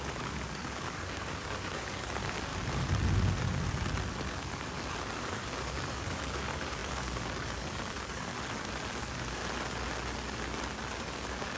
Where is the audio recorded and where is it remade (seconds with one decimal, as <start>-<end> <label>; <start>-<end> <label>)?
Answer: 0.0-2.5 remade; 2.5-4.3 recorded; 4.3-8.3 remade; 8.3-9.0 recorded; 9.0-9.4 remade; 9.4-11.0 recorded; 11.0-11.6 remade